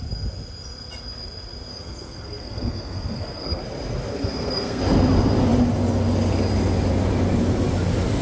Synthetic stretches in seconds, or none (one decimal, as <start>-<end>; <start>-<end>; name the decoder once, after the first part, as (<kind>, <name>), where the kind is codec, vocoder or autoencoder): 1.7-3.6 (codec, SNAC); 4.1-4.8